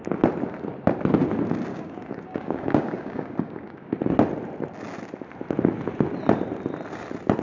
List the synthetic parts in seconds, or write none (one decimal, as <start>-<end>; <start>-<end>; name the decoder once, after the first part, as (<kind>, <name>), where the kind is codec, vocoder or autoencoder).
1.7-3.9 (codec, DAC)